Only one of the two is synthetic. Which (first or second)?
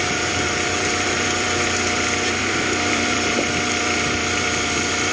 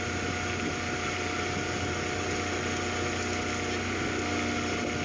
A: first